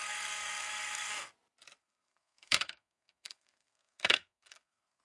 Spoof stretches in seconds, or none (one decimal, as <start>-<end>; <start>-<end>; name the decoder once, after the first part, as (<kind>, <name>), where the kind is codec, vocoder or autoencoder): 0.0-1.1 (codec, SNAC); 1.8-5.0